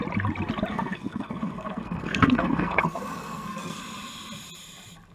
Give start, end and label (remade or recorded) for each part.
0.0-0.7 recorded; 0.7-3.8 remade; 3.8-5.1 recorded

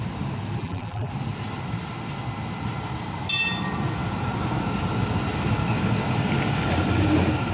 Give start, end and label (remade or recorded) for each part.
0.0-0.6 recorded; 0.6-1.1 remade; 1.1-7.5 recorded

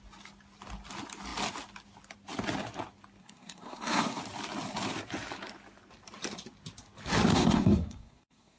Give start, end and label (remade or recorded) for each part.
0.0-3.2 recorded; 3.2-4.2 remade; 4.2-7.3 recorded; 7.3-8.6 remade

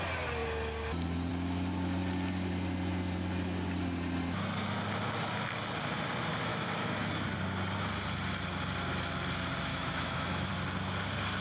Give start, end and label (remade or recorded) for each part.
0.0-6.5 recorded; 6.5-7.1 remade; 7.1-9.7 recorded; 9.7-10.5 remade; 10.5-11.4 recorded

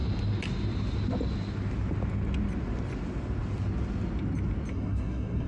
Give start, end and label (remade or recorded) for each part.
0.0-4.7 recorded; 4.7-5.5 remade

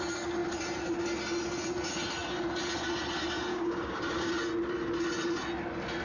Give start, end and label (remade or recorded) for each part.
0.0-3.5 recorded; 3.5-4.3 remade; 4.3-6.0 recorded

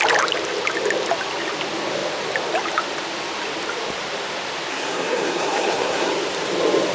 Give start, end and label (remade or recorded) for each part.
0.0-4.7 recorded; 4.7-6.1 remade; 6.1-6.9 recorded

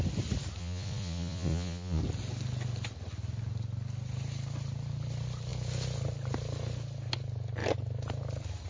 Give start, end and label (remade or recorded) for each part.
0.0-0.6 recorded; 0.6-2.0 remade; 2.0-8.7 recorded